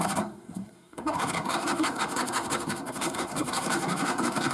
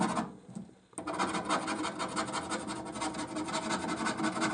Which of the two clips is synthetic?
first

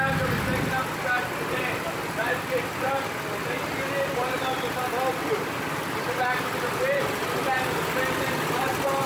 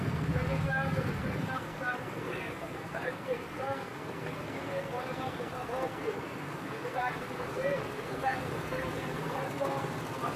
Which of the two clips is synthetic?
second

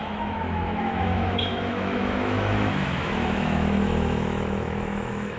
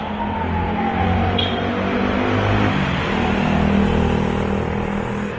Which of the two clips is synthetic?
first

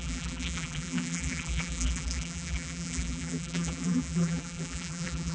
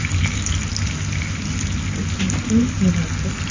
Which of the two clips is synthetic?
first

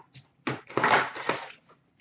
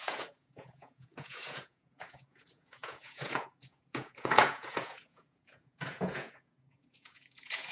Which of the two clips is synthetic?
second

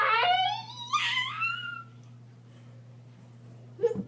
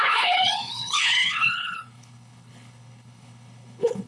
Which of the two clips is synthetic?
second